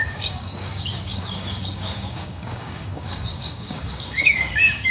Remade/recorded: remade